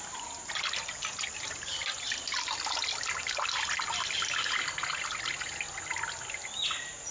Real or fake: real